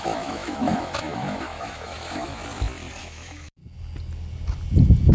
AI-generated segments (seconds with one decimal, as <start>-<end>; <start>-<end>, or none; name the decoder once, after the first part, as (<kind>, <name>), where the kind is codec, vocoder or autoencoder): 0.0-2.4 (autoencoder, DAC-VAE); 3.0-3.6